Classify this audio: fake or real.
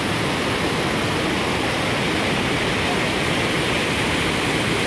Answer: real